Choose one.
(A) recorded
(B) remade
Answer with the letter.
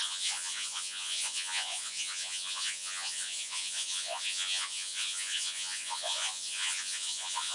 B